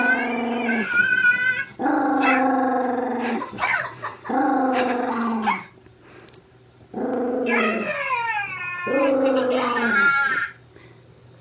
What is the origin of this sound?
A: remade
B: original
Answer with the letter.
B